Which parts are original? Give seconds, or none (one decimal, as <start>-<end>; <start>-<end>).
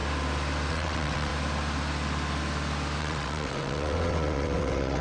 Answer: 0.0-0.7; 1.3-3.0